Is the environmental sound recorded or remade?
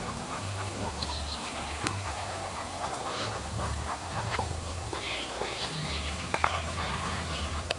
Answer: remade